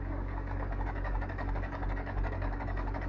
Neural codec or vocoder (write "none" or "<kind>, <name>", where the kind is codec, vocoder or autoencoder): codec, DAC